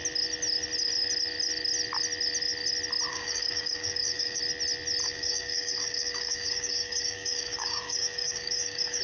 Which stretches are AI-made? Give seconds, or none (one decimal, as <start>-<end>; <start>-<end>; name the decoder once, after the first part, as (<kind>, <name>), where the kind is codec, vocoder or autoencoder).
3.1-4.4 (codec, DAC); 5.0-9.0